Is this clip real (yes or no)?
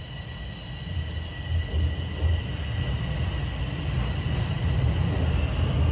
yes